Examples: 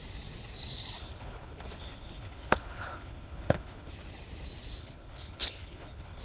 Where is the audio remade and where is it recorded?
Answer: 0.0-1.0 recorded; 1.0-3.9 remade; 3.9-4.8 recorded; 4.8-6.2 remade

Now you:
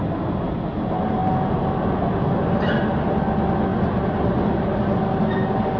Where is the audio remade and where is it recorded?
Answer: 0.0-5.8 recorded

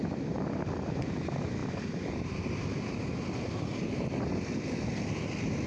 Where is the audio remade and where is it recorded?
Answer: 0.0-5.7 recorded

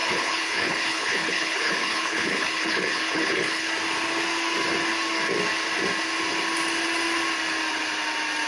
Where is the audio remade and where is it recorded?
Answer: 0.0-3.7 remade; 3.7-8.5 recorded

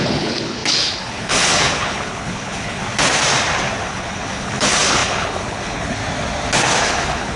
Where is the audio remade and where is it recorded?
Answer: 0.0-2.8 remade; 2.8-3.9 recorded; 3.9-6.0 remade; 6.0-6.8 recorded; 6.8-7.4 remade

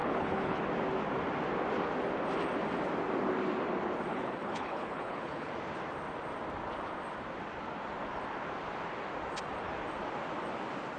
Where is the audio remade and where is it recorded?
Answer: 0.0-0.6 remade; 0.6-4.1 recorded; 4.1-5.5 remade; 5.5-11.0 recorded

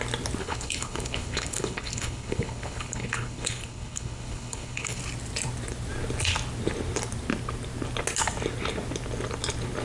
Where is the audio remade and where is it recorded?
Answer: 0.0-0.4 recorded; 0.4-5.0 remade; 5.0-9.8 recorded

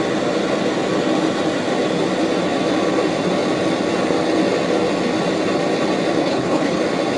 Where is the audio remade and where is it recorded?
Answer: 0.0-6.2 recorded; 6.2-6.8 remade; 6.8-7.2 recorded